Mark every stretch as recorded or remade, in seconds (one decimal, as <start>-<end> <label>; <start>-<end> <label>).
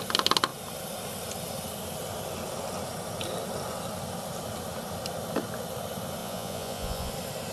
0.0-6.2 recorded; 6.2-7.1 remade; 7.1-7.5 recorded